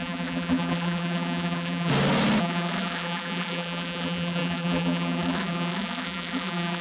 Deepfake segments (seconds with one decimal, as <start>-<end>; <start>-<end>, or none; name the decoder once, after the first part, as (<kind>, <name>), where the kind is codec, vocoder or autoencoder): 0.0-1.9 (vocoder, BigVGAN v2); 2.4-6.8